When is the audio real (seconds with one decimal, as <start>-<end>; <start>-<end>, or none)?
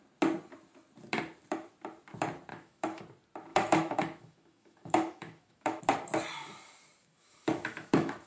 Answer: 0.0-2.5; 3.0-3.5; 5.8-7.0